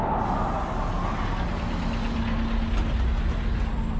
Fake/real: real